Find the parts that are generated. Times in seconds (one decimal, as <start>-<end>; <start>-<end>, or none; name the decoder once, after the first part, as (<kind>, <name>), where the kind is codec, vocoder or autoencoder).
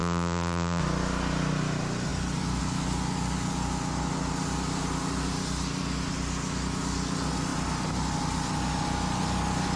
0.0-0.8 (vocoder, BigVGAN v2)